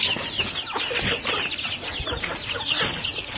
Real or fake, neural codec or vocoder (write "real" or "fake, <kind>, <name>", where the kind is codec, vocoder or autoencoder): real